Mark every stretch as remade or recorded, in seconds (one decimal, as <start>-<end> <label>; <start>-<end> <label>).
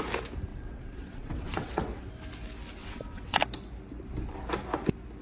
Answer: 0.0-0.5 recorded; 0.5-2.1 remade; 2.1-2.8 recorded; 2.8-3.4 remade; 3.4-5.2 recorded